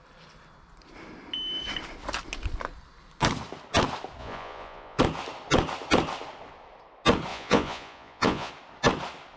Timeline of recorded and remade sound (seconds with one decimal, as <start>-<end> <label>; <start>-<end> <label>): 0.0-4.2 recorded; 4.2-5.0 remade; 5.0-7.3 recorded; 7.3-8.5 remade; 8.5-9.4 recorded